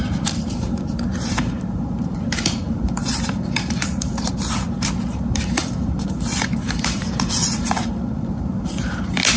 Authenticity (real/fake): fake